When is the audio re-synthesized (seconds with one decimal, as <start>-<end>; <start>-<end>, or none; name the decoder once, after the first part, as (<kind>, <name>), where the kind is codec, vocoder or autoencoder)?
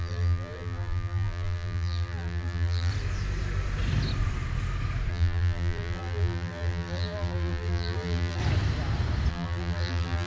0.0-2.9 (vocoder, BigVGAN v2); 5.1-8.4; 9.3-10.3